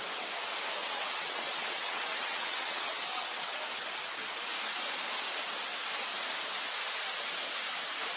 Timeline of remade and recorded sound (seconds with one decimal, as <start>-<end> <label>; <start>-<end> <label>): 0.0-0.8 recorded; 0.8-3.6 remade; 3.6-8.2 recorded